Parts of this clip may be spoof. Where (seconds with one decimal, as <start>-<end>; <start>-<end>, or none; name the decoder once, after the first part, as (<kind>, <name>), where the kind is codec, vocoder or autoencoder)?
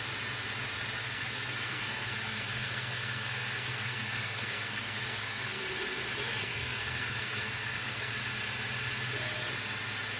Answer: 1.0-5.6 (codec, SNAC); 6.4-8.1